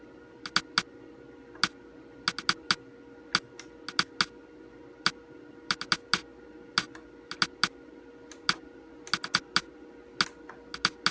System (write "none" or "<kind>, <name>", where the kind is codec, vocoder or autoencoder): none